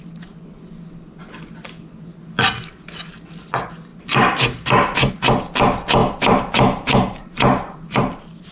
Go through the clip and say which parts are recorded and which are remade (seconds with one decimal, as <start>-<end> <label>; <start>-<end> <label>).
0.0-3.9 recorded; 3.9-5.1 remade; 5.1-6.0 recorded; 6.0-8.5 remade